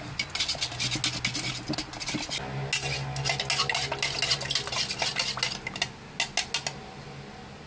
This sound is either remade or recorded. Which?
recorded